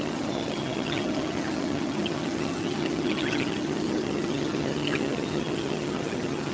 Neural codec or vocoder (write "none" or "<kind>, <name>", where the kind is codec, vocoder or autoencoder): vocoder, HiFi-GAN